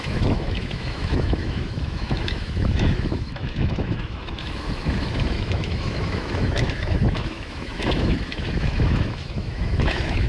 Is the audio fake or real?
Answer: fake